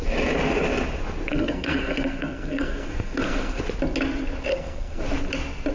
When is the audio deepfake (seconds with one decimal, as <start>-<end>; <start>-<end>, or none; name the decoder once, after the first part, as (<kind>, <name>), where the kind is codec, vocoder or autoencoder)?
1.3-3.6 (codec, SNAC); 4.5-5.0